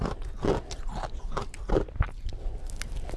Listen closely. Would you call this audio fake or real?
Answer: real